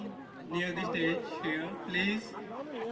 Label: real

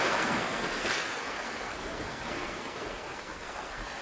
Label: fake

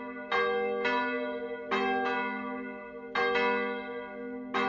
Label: real